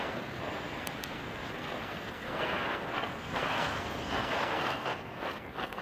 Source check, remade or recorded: remade